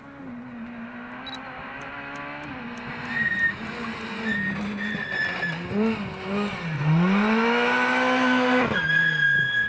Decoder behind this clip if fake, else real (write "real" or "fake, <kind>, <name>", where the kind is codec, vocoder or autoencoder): real